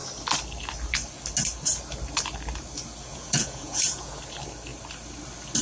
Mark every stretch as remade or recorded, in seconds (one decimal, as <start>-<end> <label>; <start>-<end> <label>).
0.0-3.1 recorded; 3.1-4.2 remade; 4.2-5.6 recorded